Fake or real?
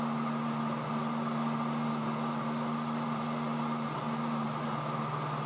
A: real